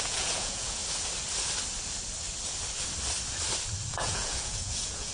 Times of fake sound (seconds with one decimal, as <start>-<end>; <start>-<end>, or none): 0.0-0.8; 3.9-5.1